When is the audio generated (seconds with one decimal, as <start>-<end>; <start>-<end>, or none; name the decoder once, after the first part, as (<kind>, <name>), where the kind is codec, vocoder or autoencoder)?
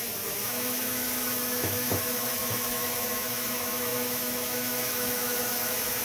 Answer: 0.0-6.0 (autoencoder, DAC-VAE)